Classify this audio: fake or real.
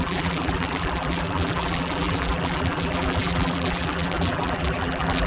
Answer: fake